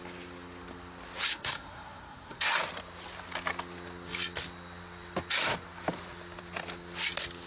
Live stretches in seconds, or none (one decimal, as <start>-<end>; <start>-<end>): 0.0-1.3; 2.4-7.5